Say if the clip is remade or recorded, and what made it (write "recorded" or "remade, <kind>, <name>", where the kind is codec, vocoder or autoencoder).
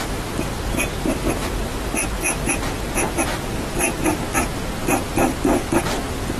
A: recorded